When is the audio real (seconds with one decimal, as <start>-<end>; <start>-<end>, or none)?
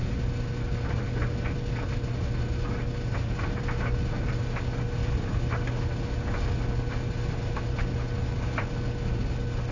0.0-5.0; 5.6-9.7